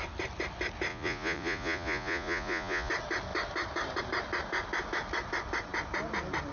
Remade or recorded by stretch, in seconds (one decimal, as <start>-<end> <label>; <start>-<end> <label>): 0.0-0.9 recorded; 0.9-2.9 remade; 2.9-6.5 recorded